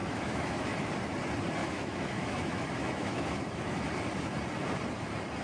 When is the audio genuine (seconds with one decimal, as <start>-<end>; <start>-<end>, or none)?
0.9-1.6; 3.9-5.4